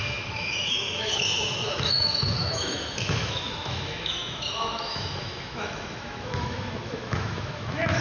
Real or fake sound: fake